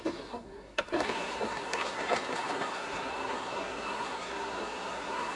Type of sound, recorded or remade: remade